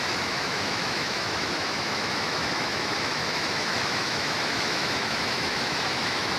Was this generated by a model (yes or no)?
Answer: yes